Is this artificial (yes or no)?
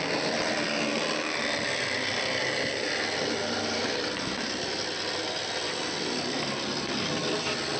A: no